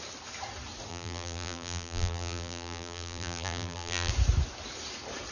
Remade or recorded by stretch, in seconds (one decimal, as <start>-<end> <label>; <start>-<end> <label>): 0.0-0.9 recorded; 0.9-4.1 remade; 4.1-5.3 recorded